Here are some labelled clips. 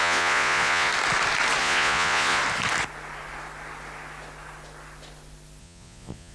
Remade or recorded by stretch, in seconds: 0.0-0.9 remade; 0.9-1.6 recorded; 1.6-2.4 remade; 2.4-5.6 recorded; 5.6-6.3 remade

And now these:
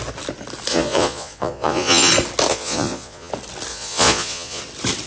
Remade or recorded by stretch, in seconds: 0.0-0.7 recorded; 0.7-2.1 remade; 2.1-2.5 recorded; 2.5-3.3 remade; 3.3-3.7 recorded; 3.7-4.6 remade; 4.6-5.1 recorded